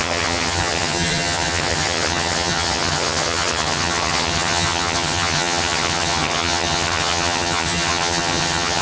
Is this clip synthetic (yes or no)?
yes